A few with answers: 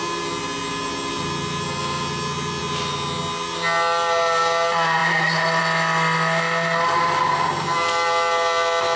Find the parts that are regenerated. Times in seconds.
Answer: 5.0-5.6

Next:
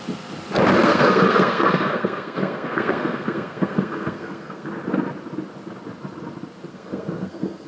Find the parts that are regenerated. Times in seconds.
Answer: 0.8-4.7; 6.7-7.7